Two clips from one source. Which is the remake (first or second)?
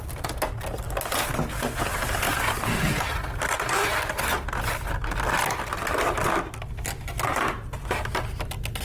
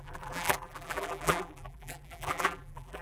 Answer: second